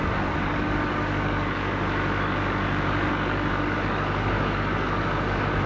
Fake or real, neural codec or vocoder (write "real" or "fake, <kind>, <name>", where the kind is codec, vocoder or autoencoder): fake, codec, DAC